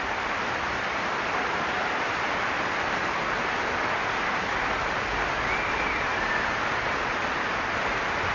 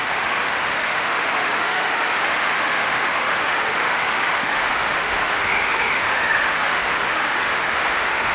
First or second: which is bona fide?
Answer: first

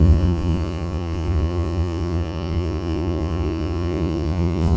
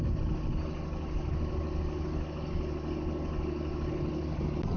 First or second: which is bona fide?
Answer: second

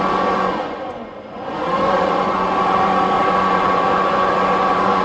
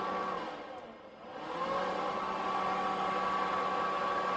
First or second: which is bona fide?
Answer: second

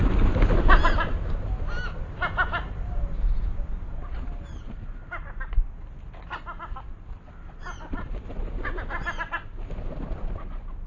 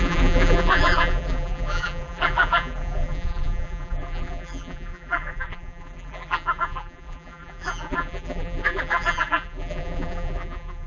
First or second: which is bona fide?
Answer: first